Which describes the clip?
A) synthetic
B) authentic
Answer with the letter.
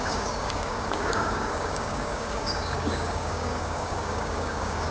A